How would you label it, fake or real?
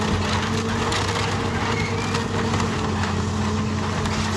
real